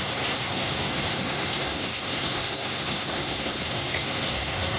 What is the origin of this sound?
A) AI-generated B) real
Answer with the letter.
A